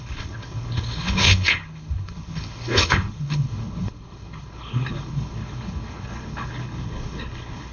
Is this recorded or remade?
remade